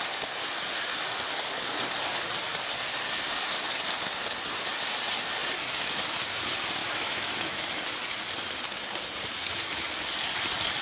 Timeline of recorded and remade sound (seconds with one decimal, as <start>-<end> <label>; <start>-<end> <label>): 0.0-6.8 recorded; 6.8-7.7 remade; 7.7-10.8 recorded